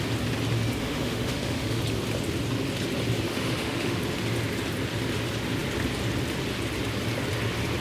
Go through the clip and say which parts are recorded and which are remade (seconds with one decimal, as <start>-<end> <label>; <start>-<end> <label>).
0.0-0.8 recorded; 0.8-1.8 remade; 1.8-3.3 recorded; 3.3-4.0 remade; 4.0-7.8 recorded